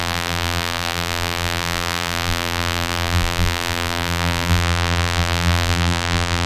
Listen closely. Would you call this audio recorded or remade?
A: remade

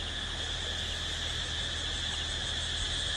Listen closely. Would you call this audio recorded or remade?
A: recorded